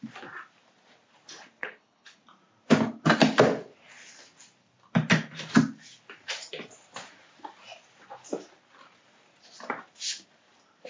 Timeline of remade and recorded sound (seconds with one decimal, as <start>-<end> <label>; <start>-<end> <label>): 0.0-1.6 recorded; 1.6-2.2 remade; 2.2-10.9 recorded